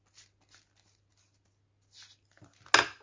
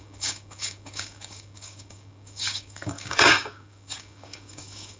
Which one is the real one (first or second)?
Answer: first